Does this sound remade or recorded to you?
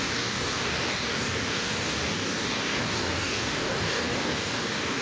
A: remade